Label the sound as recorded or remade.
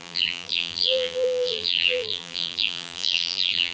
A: remade